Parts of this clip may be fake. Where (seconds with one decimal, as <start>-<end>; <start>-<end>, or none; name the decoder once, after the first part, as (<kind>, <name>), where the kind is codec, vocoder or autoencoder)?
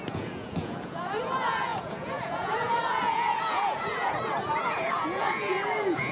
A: 0.0-6.1 (vocoder, Vocos)